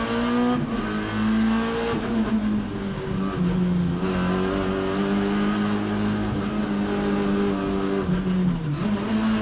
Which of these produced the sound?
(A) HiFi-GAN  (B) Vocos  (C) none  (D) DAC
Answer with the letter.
C